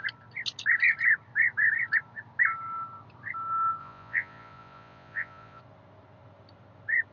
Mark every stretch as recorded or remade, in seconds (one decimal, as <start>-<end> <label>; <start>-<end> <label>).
0.0-3.8 recorded; 3.8-5.6 remade; 5.6-7.1 recorded